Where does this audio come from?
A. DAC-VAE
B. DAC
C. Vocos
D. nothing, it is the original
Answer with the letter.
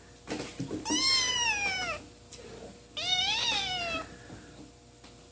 D